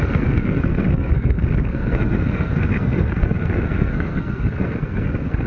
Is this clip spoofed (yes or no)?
yes